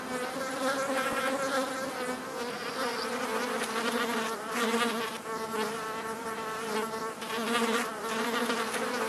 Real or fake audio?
real